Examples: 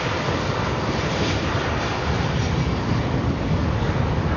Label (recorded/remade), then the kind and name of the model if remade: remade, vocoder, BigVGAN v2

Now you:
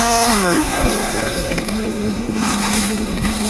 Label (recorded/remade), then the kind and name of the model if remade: remade, codec, SNAC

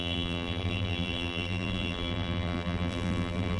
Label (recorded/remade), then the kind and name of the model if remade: remade, vocoder, BigVGAN v2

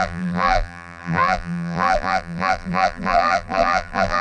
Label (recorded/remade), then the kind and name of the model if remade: remade, vocoder, BigVGAN v2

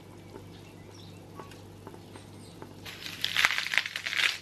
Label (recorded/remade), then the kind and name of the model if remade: recorded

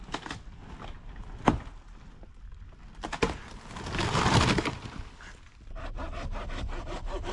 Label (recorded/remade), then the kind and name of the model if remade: recorded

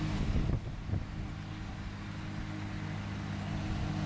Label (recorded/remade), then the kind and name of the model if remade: recorded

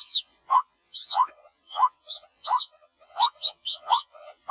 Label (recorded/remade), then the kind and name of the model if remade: remade, vocoder, Vocos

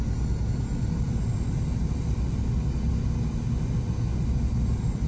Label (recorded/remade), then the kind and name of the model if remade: recorded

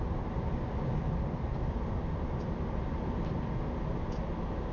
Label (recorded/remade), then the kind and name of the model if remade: recorded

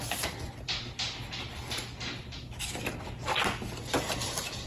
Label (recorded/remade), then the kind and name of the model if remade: recorded